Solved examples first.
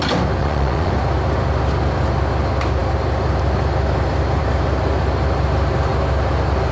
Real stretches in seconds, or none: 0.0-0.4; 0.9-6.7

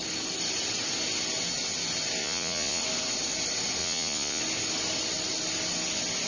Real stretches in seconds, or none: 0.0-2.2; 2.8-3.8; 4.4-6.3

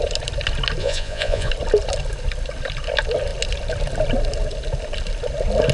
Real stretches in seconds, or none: 0.0-0.8; 1.5-5.7